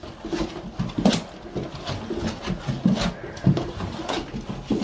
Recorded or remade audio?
remade